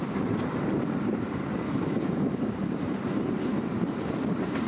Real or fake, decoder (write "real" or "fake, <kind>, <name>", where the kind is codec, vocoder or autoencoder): fake, vocoder, BigVGAN v2